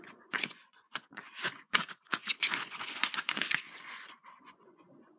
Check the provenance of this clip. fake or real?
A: fake